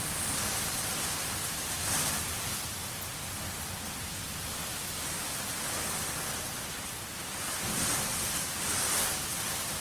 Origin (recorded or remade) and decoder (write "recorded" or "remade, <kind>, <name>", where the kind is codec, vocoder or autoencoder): recorded